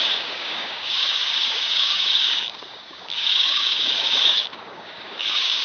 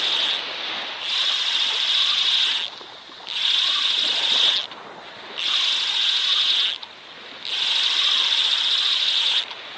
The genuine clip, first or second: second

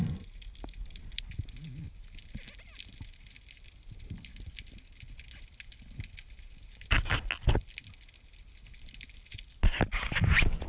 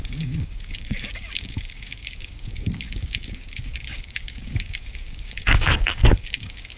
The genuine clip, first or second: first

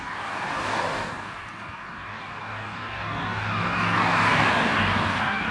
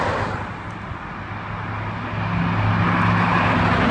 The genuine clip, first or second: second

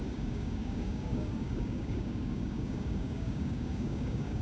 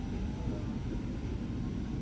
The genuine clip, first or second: second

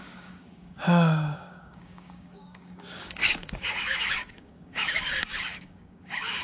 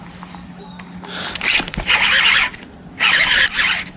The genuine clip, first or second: second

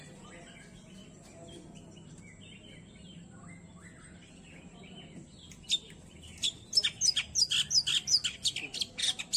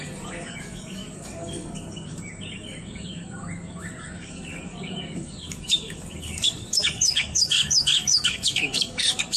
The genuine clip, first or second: first